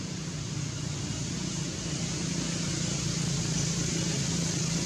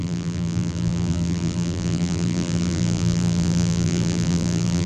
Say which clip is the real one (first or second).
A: first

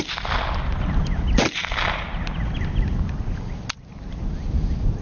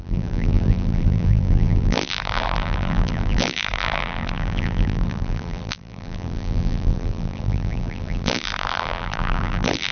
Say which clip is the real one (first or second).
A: first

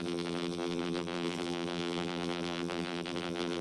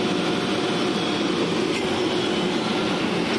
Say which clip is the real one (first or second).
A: second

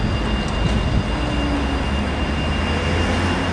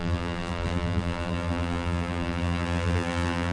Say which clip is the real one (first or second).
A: first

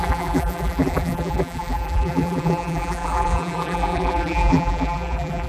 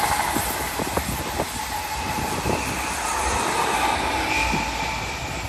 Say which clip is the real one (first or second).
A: second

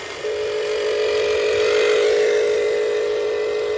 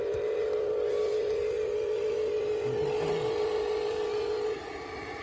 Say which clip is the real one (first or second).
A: first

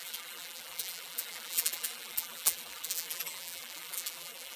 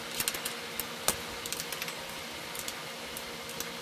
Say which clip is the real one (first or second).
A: second